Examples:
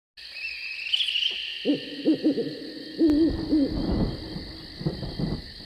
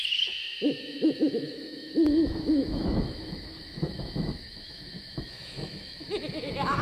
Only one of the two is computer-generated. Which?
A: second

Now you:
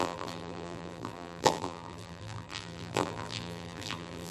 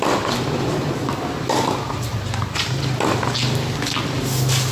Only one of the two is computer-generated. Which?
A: first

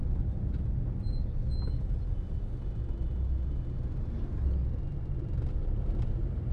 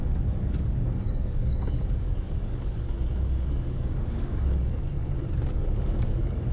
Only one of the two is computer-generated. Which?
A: second